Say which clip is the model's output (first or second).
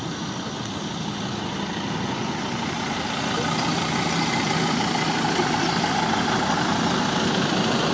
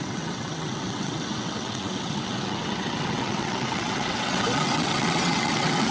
second